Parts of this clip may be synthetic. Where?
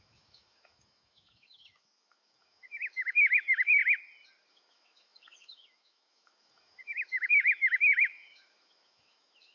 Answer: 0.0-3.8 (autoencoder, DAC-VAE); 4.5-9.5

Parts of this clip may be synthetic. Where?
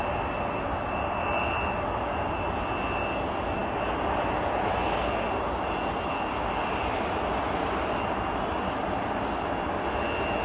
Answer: none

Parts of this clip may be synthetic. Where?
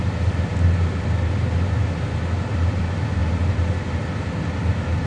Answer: none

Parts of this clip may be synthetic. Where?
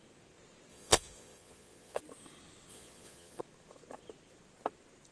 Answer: 0.7-2.0 (vocoder, Vocos); 2.7-3.4